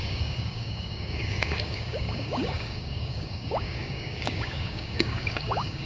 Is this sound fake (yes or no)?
yes